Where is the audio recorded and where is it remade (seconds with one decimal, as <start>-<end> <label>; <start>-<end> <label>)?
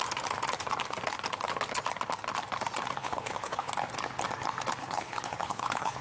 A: 0.0-3.0 recorded; 3.0-3.7 remade; 3.7-4.8 recorded; 4.8-6.0 remade